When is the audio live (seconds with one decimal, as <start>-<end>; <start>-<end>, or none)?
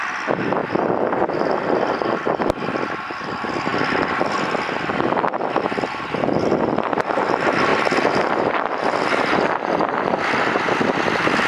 0.0-11.5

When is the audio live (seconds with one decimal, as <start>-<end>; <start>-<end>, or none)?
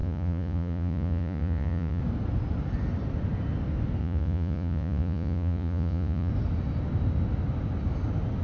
2.0-4.0; 6.3-8.4